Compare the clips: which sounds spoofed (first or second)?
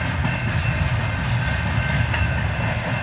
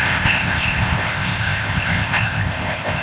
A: second